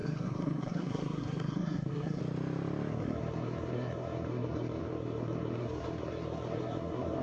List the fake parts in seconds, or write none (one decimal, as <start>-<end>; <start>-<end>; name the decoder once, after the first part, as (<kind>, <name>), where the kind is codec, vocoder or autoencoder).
0.0-2.2 (codec, SNAC); 2.9-7.2